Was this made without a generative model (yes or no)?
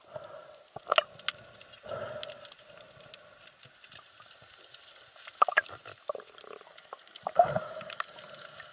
yes